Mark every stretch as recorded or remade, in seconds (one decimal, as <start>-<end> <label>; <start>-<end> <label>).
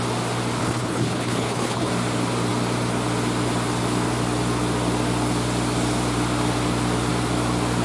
0.0-0.6 recorded; 0.6-1.9 remade; 1.9-7.8 recorded